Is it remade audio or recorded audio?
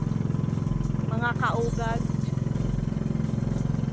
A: recorded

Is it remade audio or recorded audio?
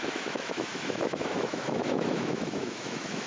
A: remade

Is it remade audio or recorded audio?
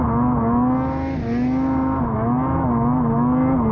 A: recorded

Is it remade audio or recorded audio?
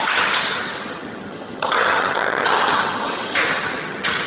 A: remade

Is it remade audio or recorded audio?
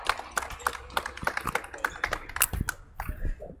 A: recorded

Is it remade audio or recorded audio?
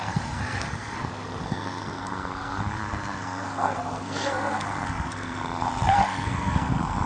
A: remade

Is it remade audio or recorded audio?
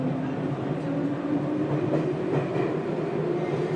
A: recorded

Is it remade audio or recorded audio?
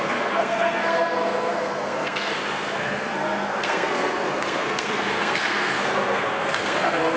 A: remade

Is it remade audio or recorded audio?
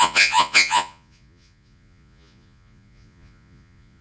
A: remade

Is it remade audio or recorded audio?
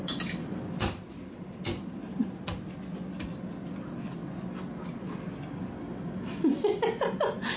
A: recorded